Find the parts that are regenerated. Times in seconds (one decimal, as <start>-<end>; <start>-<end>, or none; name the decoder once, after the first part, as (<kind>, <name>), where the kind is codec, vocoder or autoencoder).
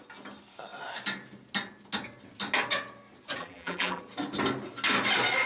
3.4-4.0 (vocoder, BigVGAN v2)